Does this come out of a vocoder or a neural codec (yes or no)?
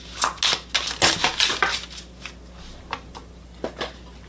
no